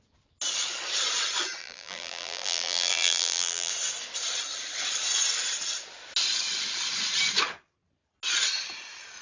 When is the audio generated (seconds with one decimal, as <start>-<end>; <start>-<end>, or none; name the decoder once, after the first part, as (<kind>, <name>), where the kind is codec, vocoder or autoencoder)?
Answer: 1.6-3.7 (vocoder, BigVGAN v2)